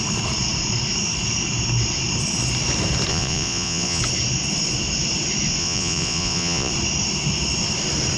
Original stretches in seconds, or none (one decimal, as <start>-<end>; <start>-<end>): 0.0-3.1; 4.0-5.6; 6.7-8.2